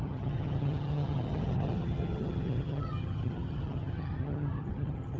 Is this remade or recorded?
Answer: remade